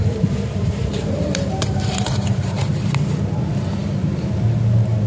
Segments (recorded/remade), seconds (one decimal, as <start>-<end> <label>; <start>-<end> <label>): 0.0-3.1 remade; 3.1-5.1 recorded

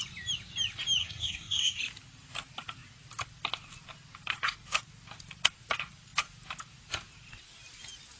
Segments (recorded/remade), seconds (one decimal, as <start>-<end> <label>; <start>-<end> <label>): 0.0-1.0 recorded; 1.0-1.8 remade; 1.8-8.2 recorded

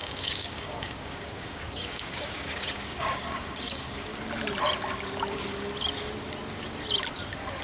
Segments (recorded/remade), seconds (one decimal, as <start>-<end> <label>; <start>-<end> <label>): 0.0-4.1 remade; 4.1-7.6 recorded

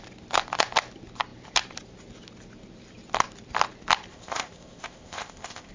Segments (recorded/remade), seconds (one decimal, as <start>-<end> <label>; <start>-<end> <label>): 0.0-4.1 recorded; 4.1-5.7 remade